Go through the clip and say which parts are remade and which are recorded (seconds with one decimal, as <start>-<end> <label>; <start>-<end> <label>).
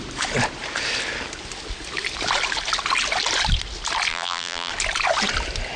0.0-4.1 recorded; 4.1-4.7 remade; 4.7-5.8 recorded